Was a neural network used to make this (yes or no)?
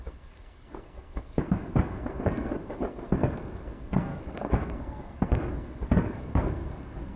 yes